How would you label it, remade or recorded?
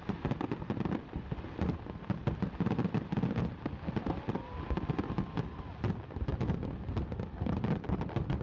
recorded